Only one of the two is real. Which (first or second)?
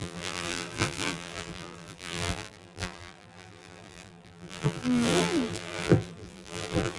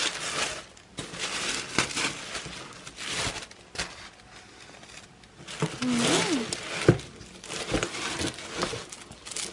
second